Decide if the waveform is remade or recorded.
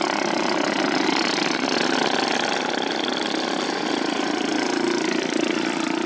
recorded